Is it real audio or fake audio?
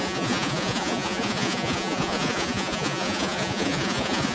fake